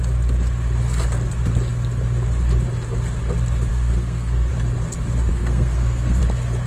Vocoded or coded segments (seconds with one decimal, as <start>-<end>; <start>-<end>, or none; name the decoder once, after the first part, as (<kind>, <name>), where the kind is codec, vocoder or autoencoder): 3.7-4.5 (codec, SNAC); 5.3-6.2